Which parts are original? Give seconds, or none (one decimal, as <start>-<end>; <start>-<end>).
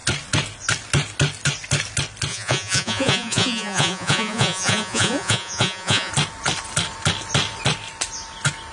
0.0-2.3; 6.1-8.7